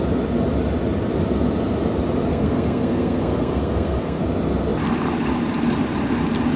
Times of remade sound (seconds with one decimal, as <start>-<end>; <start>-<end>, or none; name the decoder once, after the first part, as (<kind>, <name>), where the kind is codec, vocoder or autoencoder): 2.3-4.2 (codec, SNAC)